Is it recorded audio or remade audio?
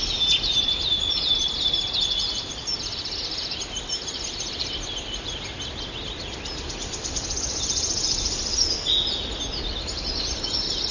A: recorded